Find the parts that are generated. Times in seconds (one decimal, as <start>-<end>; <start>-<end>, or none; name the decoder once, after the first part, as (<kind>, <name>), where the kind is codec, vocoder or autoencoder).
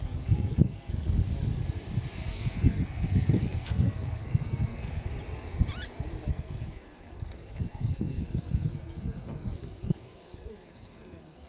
0.0-1.2 (codec, SNAC); 2.3-5.1; 6.3-11.5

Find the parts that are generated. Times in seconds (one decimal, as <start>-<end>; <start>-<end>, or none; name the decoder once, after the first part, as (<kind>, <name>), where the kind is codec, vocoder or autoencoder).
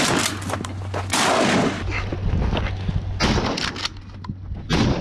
none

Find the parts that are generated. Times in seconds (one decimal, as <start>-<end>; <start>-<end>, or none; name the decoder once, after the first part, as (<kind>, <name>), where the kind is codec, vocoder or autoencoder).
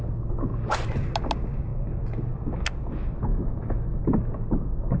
3.3-4.0 (autoencoder, DAC-VAE)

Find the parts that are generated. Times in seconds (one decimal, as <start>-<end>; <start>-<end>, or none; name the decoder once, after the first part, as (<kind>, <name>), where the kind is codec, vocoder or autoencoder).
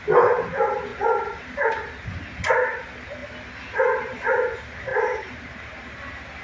0.9-1.7 (vocoder, BigVGAN v2); 4.9-5.9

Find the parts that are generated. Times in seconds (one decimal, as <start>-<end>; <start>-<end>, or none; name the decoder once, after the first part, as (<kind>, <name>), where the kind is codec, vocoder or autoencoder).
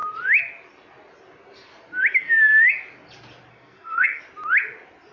3.5-4.2 (codec, SNAC)